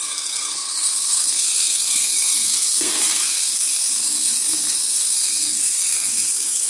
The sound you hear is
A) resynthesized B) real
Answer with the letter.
A